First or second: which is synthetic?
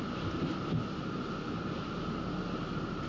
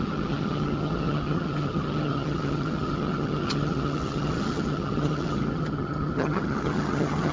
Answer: second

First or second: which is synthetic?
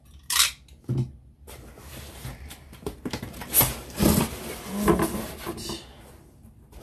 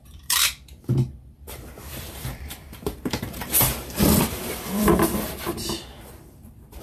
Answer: second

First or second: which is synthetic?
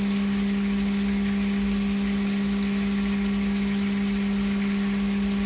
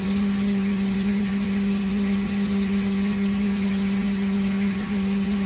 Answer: second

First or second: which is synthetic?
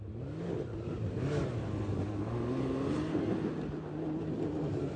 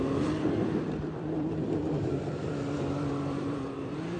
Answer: second